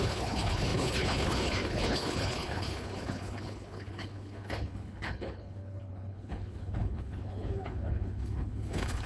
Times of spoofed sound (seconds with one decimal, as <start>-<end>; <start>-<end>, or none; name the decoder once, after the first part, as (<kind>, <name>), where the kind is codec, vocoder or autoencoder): 0.0-9.1 (codec, HILCodec)